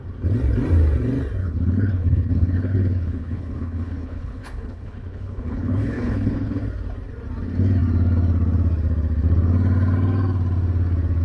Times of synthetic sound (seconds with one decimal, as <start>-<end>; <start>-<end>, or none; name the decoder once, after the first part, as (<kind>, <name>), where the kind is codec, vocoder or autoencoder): 1.4-6.6 (codec, HILCodec)